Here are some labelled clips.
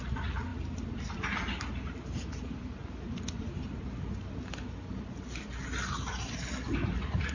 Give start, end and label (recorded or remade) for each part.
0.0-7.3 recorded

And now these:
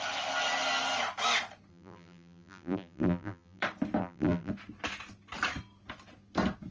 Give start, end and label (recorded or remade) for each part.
0.0-1.7 recorded; 1.7-3.6 remade; 3.6-4.0 recorded; 4.0-4.5 remade; 4.5-6.7 recorded